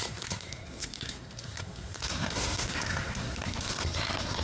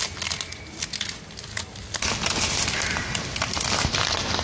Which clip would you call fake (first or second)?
first